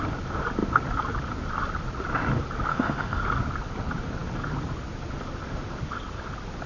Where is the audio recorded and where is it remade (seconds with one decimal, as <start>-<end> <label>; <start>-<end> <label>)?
0.0-2.7 recorded; 2.7-3.2 remade; 3.2-6.7 recorded